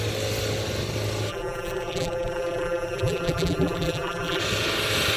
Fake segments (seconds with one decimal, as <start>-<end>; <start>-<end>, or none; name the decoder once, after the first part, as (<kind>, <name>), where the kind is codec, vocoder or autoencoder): 1.3-4.4 (vocoder, BigVGAN v2)